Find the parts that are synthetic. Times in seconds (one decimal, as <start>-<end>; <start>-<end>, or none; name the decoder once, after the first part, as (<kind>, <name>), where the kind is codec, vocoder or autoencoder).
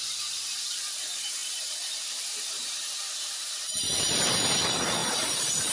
0.0-5.7 (vocoder, BigVGAN v2)